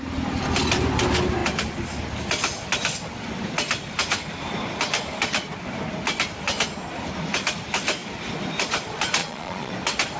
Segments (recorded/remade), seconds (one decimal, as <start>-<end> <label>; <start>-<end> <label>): 0.0-9.2 recorded; 9.2-9.7 remade; 9.7-10.2 recorded